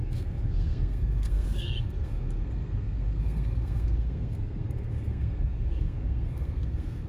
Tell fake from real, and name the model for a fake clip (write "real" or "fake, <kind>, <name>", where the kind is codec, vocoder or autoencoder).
fake, codec, SNAC